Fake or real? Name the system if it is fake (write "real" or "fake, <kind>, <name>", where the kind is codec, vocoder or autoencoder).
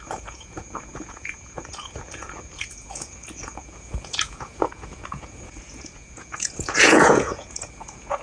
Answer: fake, vocoder, Vocos